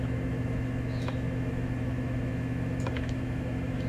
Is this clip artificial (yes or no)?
yes